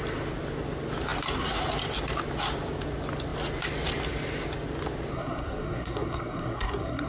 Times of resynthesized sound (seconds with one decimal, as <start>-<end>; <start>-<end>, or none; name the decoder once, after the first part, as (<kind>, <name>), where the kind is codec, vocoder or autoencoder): 5.1-7.1 (codec, SNAC)